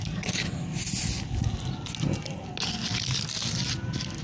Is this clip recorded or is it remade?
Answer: recorded